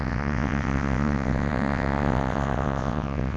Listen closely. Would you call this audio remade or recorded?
remade